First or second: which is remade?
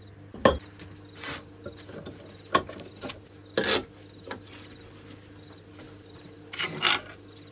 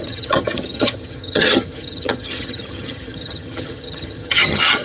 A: second